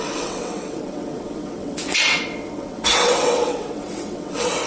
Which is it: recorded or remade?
remade